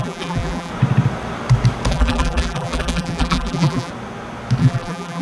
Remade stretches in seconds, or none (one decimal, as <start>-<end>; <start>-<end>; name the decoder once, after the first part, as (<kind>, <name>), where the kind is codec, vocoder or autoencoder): 0.0-0.7 (vocoder, BigVGAN v2); 1.9-3.9; 4.6-5.2